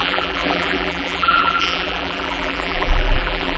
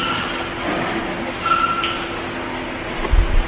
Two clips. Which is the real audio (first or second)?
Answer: second